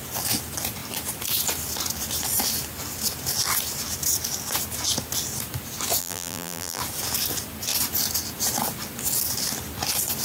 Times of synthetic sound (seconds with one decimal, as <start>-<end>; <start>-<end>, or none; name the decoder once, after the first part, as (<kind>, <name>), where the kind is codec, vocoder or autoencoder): 6.0-6.8 (vocoder, BigVGAN v2)